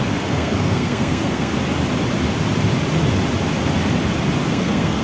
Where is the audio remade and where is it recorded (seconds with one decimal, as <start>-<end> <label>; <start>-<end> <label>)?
0.0-1.5 remade; 1.5-4.5 recorded; 4.5-5.0 remade